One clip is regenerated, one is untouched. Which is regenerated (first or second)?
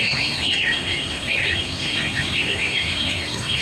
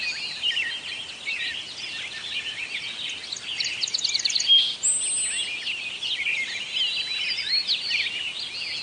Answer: first